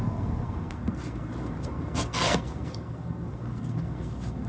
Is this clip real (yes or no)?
no